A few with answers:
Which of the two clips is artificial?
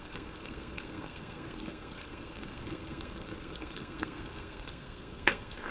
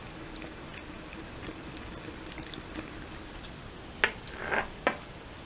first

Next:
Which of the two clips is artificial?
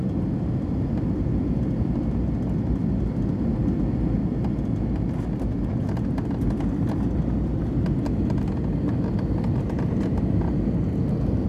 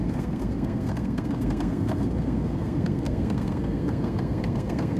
second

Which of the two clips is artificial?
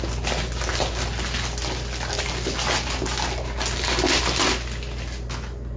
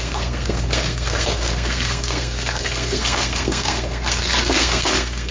second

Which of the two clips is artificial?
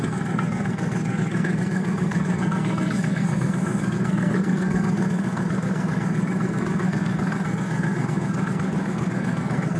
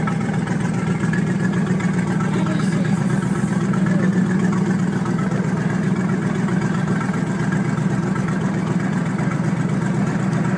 first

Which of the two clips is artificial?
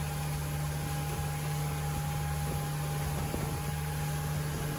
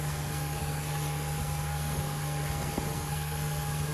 second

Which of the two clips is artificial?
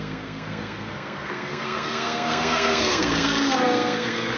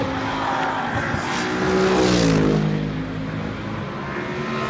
first